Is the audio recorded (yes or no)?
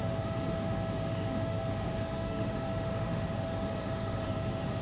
no